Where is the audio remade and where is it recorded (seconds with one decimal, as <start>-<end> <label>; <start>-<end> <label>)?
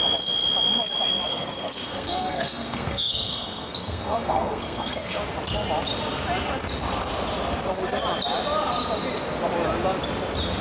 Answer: 0.0-1.3 recorded; 1.3-5.2 remade; 5.2-10.6 recorded